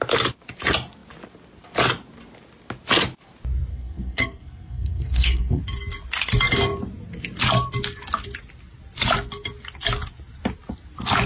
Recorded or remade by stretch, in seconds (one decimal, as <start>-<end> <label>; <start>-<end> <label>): 0.0-3.7 recorded; 3.7-5.6 remade; 5.6-11.3 recorded